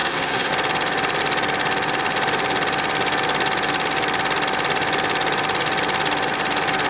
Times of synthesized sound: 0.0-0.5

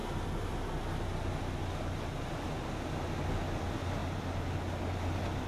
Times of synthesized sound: none